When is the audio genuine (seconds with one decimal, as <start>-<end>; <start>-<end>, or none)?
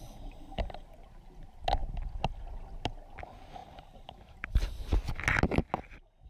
0.0-3.6; 4.9-6.3